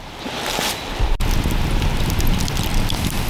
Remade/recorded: recorded